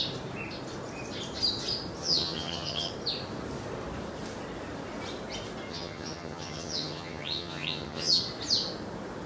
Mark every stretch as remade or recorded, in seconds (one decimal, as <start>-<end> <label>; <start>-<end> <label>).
0.0-2.0 recorded; 2.0-2.9 remade; 2.9-5.7 recorded; 5.7-8.2 remade; 8.2-9.3 recorded